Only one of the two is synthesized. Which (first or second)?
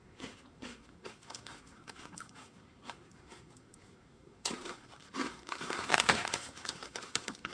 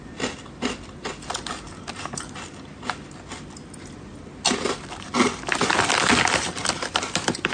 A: first